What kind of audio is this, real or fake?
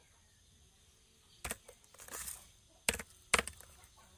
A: real